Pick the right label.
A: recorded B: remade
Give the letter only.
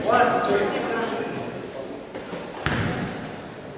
A